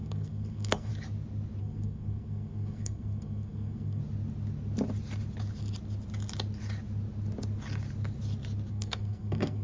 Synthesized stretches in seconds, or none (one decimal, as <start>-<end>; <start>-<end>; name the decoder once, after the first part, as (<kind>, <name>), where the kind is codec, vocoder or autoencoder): 0.0-0.9 (codec, SNAC); 1.6-4.0; 8.7-9.6